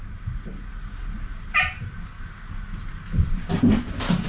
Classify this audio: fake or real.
real